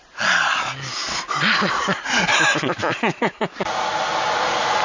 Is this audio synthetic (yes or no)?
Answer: no